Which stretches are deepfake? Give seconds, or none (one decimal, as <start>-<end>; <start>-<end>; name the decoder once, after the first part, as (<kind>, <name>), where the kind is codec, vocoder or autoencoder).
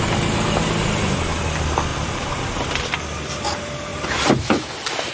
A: 1.9-2.8 (vocoder, BigVGAN v2); 3.9-5.1